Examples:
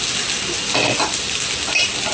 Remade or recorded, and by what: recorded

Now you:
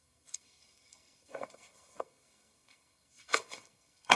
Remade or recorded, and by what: remade, codec, SNAC